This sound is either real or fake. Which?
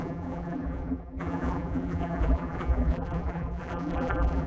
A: fake